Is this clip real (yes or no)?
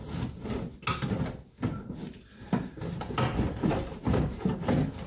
yes